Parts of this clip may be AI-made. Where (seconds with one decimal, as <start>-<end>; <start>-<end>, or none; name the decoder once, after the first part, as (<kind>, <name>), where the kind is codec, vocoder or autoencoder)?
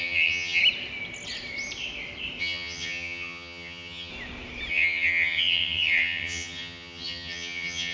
0.0-0.6 (vocoder, HiFi-GAN); 2.4-4.1; 4.7-7.9